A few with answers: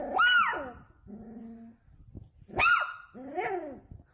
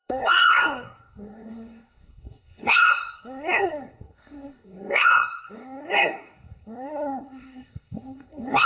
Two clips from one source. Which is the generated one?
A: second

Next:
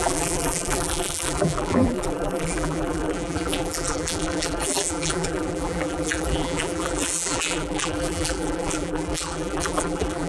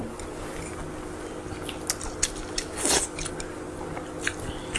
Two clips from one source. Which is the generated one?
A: first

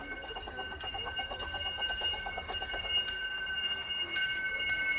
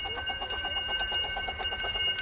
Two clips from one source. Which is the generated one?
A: first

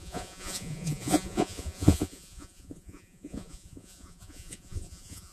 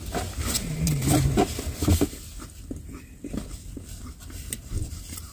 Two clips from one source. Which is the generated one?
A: first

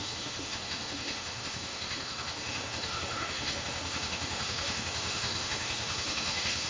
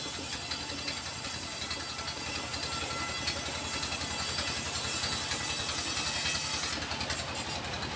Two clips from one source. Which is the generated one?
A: first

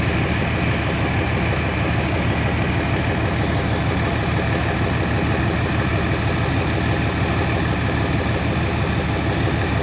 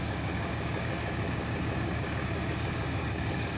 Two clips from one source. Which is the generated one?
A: second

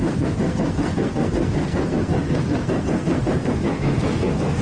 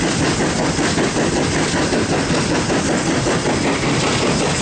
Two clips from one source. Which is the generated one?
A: first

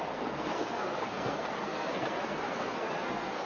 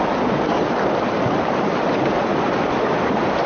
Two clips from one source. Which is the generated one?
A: first